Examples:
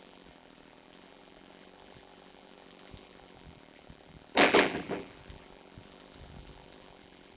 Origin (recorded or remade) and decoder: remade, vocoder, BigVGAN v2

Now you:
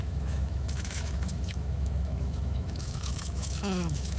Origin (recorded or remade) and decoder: remade, autoencoder, DAC-VAE